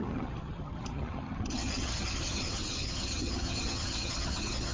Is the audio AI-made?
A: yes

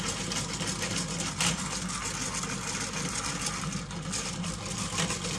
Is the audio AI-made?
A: no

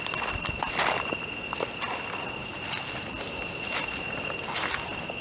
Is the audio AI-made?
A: no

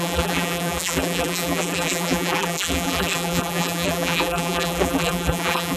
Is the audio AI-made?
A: yes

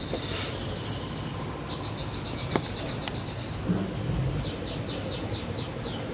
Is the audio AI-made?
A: no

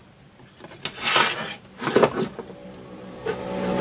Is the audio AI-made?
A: no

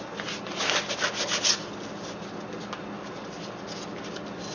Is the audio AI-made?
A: no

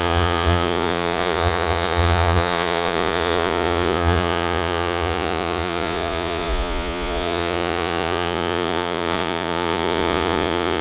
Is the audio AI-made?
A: yes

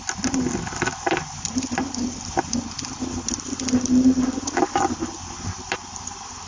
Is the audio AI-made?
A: no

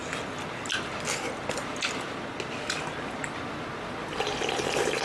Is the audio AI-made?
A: no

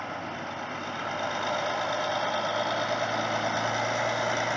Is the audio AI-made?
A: no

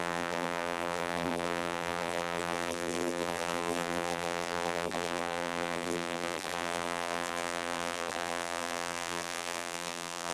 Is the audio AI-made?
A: yes